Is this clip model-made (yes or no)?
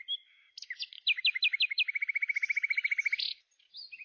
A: no